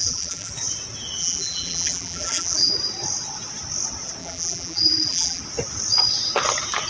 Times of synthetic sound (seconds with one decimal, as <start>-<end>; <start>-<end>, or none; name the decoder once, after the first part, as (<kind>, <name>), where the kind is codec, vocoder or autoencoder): 0.0-0.5 (vocoder, BigVGAN v2); 1.2-2.7; 4.2-5.4